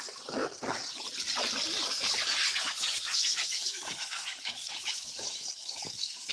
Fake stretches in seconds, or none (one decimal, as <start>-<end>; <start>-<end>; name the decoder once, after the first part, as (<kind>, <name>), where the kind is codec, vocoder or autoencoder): 2.6-6.3 (autoencoder, DAC-VAE)